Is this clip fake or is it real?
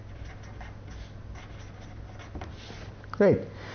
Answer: real